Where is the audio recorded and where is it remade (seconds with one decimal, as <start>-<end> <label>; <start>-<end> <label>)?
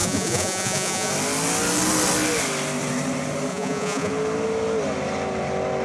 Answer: 0.0-1.1 remade; 1.1-3.5 recorded; 3.5-4.1 remade; 4.1-5.8 recorded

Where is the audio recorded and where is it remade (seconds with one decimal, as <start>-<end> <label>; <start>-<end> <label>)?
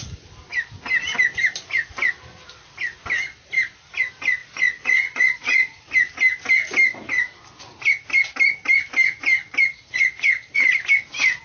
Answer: 0.0-4.4 recorded; 4.4-5.8 remade; 5.8-9.7 recorded; 9.7-10.8 remade; 10.8-11.4 recorded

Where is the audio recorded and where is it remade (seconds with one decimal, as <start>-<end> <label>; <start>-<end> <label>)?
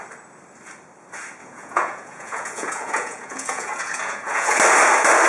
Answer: 0.0-1.4 recorded; 1.4-4.6 remade; 4.6-5.3 recorded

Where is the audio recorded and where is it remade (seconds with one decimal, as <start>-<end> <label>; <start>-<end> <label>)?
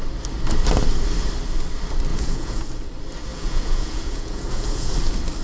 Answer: 0.0-2.1 recorded; 2.1-2.6 remade; 2.6-3.3 recorded; 3.3-4.9 remade; 4.9-5.4 recorded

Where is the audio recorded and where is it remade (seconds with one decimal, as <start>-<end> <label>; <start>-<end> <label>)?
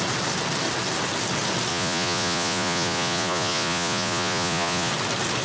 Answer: 0.0-1.7 recorded; 1.7-4.9 remade; 4.9-5.4 recorded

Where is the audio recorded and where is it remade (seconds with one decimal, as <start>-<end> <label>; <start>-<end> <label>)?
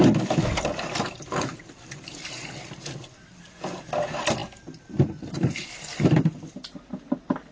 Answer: 0.0-7.5 recorded